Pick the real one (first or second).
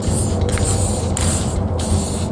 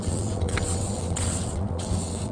first